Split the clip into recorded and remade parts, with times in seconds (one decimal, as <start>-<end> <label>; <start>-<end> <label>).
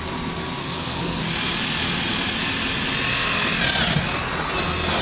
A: 0.0-0.6 recorded; 0.6-1.2 remade; 1.2-3.1 recorded; 3.1-3.6 remade; 3.6-5.0 recorded